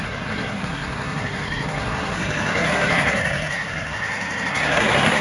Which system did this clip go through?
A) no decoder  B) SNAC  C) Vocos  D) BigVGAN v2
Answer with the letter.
B